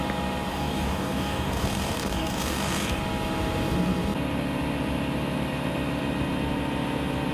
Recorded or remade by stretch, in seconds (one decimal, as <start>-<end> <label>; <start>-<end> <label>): 0.0-0.5 recorded; 0.5-3.0 remade; 3.0-7.3 recorded